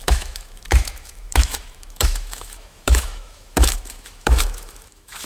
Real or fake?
fake